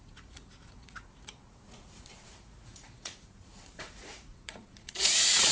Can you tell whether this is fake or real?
fake